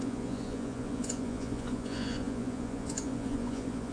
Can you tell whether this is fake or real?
fake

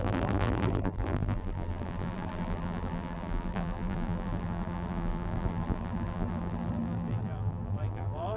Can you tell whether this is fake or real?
fake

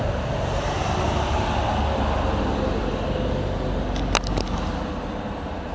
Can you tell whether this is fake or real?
real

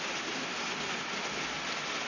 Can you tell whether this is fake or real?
real